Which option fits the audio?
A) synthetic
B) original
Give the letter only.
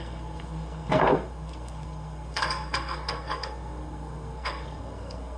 A